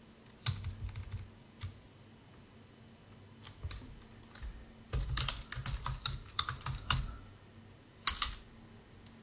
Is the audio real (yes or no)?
yes